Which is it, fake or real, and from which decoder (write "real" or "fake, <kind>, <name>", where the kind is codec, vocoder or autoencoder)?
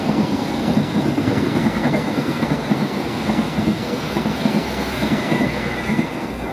fake, codec, SNAC